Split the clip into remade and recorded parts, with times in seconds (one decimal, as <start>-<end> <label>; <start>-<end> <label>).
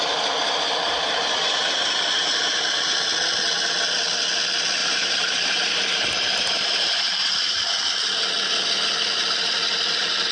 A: 0.0-0.4 recorded; 0.4-2.4 remade; 2.4-4.8 recorded; 4.8-7.6 remade; 7.6-10.3 recorded